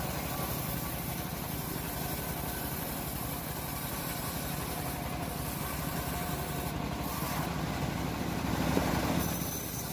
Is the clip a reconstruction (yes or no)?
yes